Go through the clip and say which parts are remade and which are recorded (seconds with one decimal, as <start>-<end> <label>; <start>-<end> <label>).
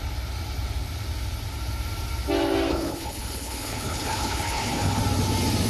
0.0-2.7 recorded; 2.7-5.0 remade; 5.0-5.7 recorded